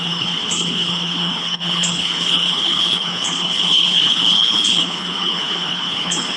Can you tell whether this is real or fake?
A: fake